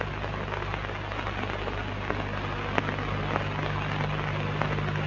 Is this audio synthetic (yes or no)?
no